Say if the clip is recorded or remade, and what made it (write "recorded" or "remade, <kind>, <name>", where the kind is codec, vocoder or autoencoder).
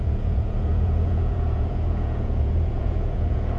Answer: remade, vocoder, Vocos